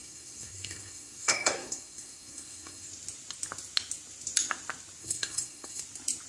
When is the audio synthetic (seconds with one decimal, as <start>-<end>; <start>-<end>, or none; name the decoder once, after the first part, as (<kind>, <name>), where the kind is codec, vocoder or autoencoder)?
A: 0.0-2.9 (codec, SNAC); 5.0-5.8